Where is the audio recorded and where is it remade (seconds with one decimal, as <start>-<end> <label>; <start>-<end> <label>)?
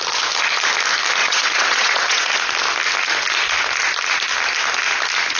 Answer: 0.0-1.2 recorded; 1.2-2.3 remade; 2.3-5.4 recorded